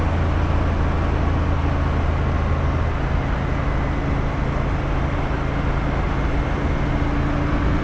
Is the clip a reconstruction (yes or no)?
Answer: no